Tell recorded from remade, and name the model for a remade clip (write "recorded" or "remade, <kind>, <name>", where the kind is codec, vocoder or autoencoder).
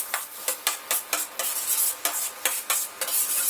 recorded